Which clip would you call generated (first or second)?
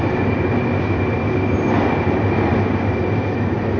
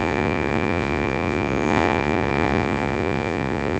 second